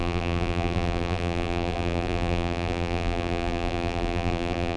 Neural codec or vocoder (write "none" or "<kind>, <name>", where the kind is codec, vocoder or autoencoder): vocoder, BigVGAN v2